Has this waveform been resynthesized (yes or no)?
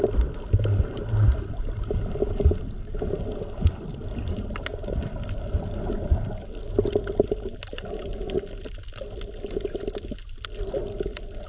no